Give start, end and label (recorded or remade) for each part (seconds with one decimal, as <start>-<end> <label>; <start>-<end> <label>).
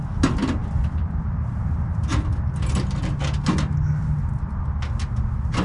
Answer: 0.0-5.6 recorded